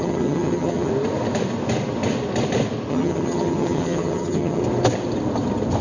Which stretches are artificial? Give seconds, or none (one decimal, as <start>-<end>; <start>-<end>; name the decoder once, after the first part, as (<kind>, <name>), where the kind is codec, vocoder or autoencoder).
0.0-0.9 (vocoder, HiFi-GAN); 2.9-4.6